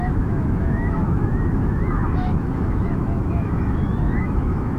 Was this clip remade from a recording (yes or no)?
yes